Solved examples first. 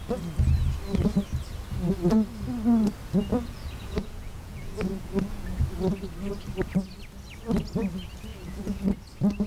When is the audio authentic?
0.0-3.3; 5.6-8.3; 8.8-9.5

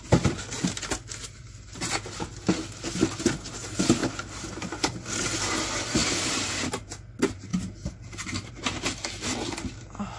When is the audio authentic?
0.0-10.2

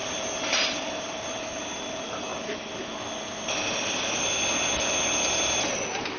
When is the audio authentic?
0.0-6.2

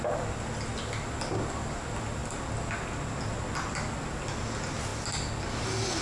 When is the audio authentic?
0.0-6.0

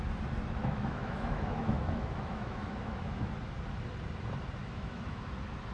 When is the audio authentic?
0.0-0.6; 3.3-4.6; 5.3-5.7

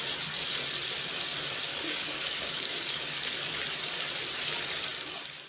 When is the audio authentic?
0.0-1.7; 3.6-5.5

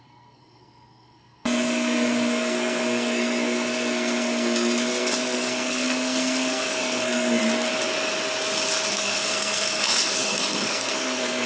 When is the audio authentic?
7.4-8.9

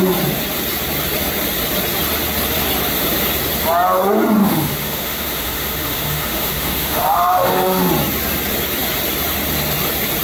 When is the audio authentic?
0.0-4.4; 7.9-10.2